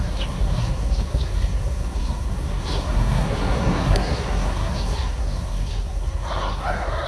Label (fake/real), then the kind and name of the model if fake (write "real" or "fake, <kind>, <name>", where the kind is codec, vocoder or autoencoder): fake, codec, SNAC